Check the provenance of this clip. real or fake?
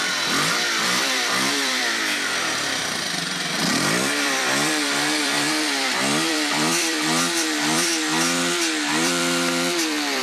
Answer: fake